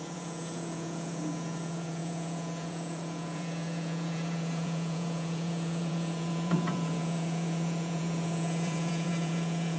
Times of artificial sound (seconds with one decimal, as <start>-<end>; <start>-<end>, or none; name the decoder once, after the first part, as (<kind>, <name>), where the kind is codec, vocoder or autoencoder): 0.0-9.8 (vocoder, Vocos)